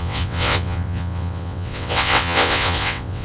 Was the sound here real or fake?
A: fake